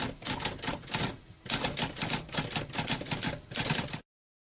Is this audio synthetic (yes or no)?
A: no